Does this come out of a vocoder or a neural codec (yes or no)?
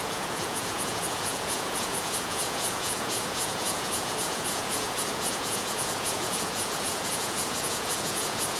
yes